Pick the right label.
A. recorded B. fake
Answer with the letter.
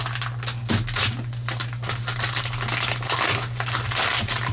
A